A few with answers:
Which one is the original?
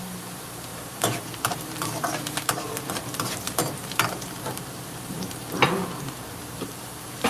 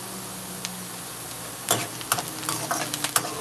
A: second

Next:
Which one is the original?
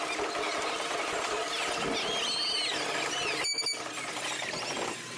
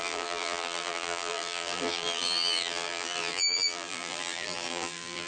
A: first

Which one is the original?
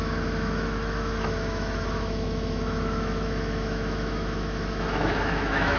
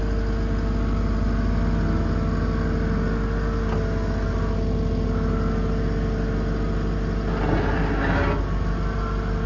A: second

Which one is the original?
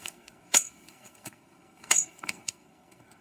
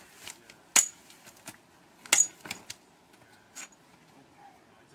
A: second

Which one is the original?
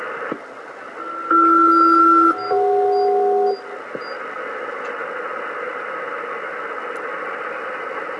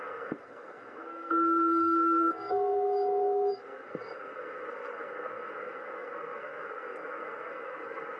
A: first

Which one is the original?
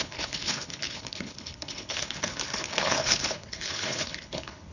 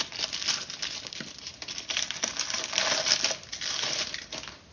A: second